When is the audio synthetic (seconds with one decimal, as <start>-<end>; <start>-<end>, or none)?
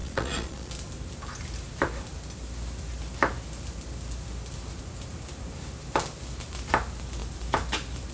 0.0-0.7